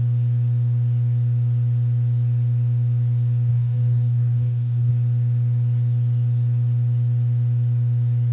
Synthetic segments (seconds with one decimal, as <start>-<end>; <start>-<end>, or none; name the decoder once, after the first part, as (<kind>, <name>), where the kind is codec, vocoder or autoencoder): 3.5-4.9 (codec, DAC)